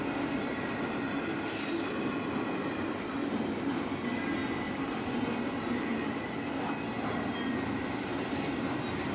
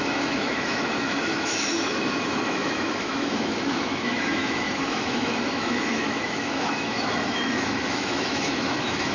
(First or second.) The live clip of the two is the first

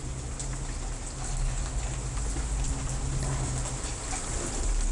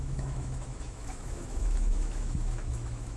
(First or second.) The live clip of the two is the first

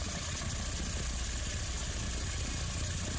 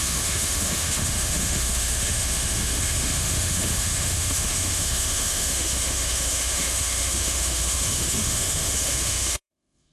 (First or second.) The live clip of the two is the first